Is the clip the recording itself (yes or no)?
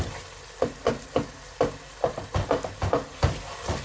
yes